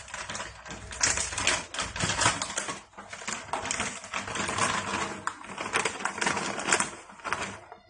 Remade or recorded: recorded